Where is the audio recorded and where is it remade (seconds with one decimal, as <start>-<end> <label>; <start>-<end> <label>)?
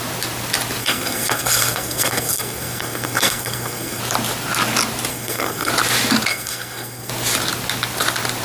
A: 0.0-0.8 recorded; 0.8-4.0 remade; 4.0-5.1 recorded; 5.1-5.7 remade; 5.7-6.3 recorded; 6.3-7.1 remade; 7.1-8.4 recorded